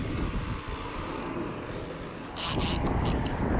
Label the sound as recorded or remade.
recorded